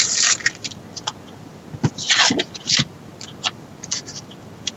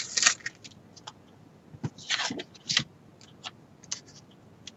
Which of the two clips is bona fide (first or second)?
second